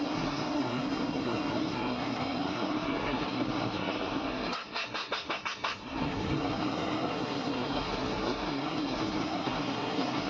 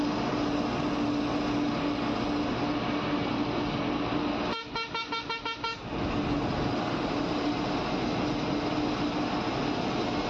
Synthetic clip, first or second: first